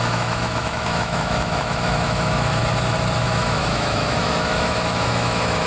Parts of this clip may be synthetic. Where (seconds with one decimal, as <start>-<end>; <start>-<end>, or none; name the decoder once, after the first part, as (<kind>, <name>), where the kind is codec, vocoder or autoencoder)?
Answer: 0.0-2.6 (autoencoder, DAC-VAE); 3.2-5.7